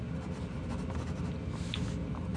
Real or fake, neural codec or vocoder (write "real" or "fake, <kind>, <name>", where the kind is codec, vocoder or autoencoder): real